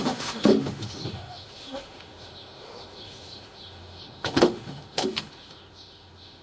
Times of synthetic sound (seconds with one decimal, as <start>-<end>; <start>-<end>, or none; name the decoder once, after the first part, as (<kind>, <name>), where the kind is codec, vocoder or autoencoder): 0.0-6.4 (autoencoder, DAC-VAE)